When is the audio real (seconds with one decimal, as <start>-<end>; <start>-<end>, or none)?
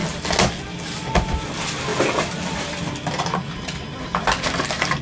0.0-5.0